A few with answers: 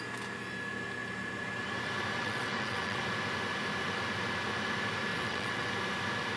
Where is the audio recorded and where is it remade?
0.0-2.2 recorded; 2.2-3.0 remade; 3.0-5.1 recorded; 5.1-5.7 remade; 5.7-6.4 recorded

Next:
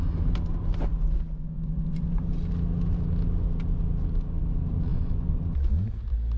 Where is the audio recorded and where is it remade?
0.0-0.9 recorded; 0.9-2.3 remade; 2.3-4.9 recorded; 4.9-5.4 remade; 5.4-6.4 recorded